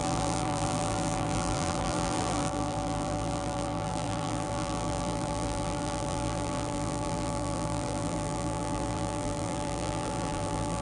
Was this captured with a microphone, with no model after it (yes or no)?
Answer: no